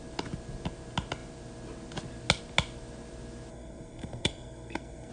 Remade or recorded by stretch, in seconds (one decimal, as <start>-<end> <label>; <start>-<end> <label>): 0.0-3.5 recorded; 3.5-5.1 remade